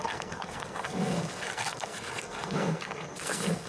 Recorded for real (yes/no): no